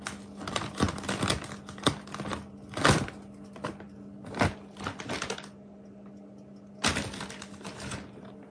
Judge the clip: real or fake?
real